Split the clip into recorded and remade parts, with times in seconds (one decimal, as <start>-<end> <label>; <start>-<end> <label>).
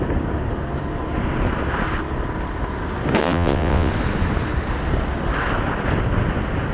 0.0-3.2 recorded; 3.2-3.9 remade; 3.9-6.7 recorded